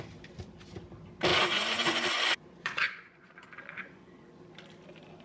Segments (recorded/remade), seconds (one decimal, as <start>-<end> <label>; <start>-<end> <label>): 0.0-1.3 recorded; 1.3-4.4 remade; 4.4-5.2 recorded